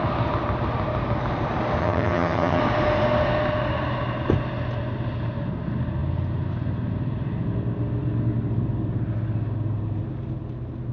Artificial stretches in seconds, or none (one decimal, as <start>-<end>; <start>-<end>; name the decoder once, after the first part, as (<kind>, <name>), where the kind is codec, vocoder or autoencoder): 1.8-2.6 (vocoder, HiFi-GAN)